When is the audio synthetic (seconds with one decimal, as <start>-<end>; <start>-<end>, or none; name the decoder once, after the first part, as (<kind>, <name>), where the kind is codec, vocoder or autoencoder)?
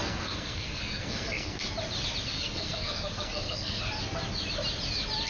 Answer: 0.0-1.7 (codec, SNAC); 2.3-3.8